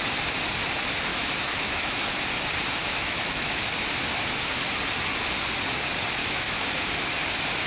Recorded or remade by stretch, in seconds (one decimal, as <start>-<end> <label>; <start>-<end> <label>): 0.0-1.1 recorded; 1.1-2.0 remade; 2.0-2.8 recorded; 2.8-3.7 remade; 3.7-6.2 recorded; 6.2-6.8 remade; 6.8-7.7 recorded